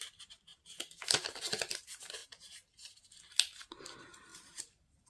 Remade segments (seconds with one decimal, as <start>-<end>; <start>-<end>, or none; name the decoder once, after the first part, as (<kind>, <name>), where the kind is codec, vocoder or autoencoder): 2.2-3.0 (vocoder, BigVGAN v2); 4.3-5.1